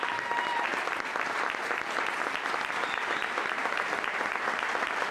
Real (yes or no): yes